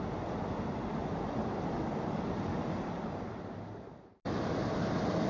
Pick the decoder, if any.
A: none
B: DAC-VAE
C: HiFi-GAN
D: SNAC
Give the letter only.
A